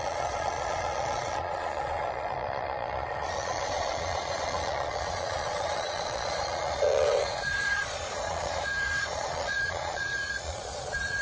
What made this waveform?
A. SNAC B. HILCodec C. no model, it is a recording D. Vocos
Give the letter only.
D